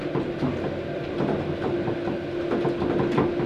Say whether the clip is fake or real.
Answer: real